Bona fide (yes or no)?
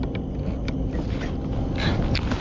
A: yes